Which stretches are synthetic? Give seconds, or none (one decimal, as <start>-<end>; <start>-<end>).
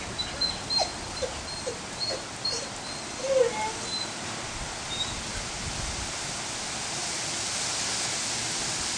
none